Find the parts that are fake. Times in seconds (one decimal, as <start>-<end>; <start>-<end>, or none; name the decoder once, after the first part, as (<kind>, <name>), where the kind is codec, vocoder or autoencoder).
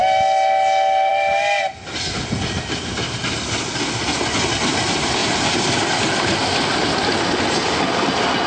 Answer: none